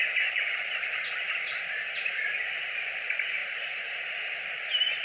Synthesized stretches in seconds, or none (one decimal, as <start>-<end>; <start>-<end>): 0.0-3.4; 4.5-5.0

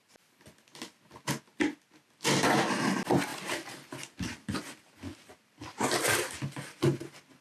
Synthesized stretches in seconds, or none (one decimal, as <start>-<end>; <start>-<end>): 3.3-7.4

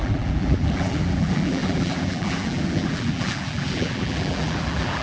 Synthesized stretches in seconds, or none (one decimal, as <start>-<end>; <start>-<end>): 0.0-5.0

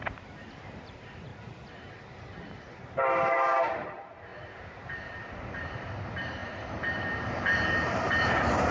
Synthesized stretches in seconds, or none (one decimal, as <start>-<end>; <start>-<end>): 0.0-8.7

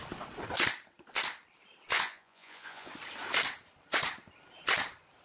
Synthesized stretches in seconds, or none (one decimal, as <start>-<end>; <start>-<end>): 1.9-2.9